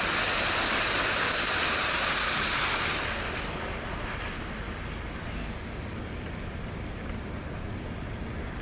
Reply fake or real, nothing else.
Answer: real